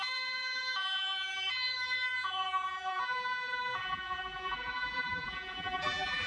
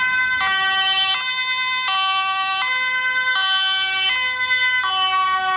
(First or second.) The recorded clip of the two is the second